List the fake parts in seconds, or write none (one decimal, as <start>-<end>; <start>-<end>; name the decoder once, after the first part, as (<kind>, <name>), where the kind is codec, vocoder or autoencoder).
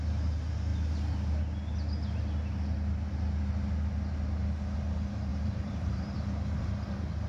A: 5.3-6.0 (vocoder, BigVGAN v2)